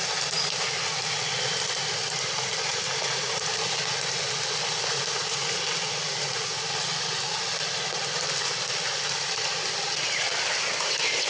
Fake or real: real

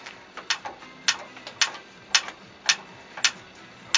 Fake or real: real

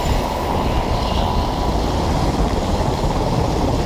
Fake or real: real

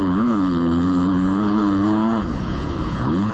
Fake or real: fake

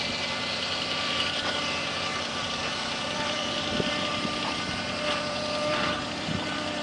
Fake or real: fake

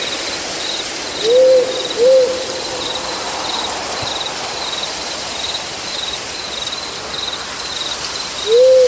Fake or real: real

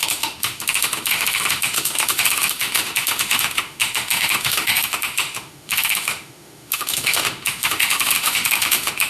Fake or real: fake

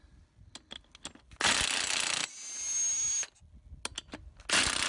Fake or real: real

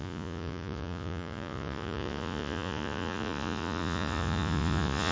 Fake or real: fake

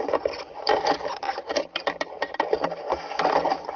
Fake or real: real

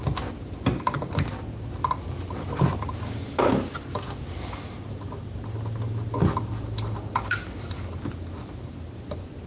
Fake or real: real